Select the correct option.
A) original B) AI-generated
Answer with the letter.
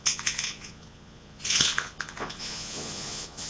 B